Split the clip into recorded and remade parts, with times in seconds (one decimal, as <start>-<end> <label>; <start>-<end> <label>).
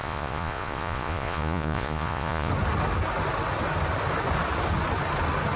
0.0-2.5 remade; 2.5-5.6 recorded